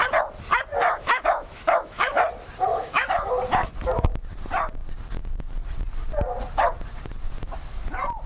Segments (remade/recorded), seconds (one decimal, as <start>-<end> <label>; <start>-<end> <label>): 0.0-0.8 recorded; 0.8-2.2 remade; 2.2-2.7 recorded; 2.7-3.3 remade; 3.3-8.3 recorded